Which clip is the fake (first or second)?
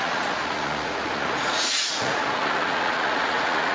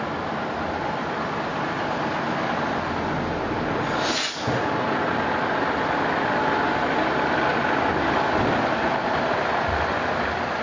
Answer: first